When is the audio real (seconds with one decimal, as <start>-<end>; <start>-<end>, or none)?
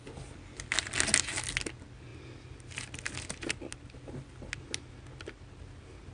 0.0-6.1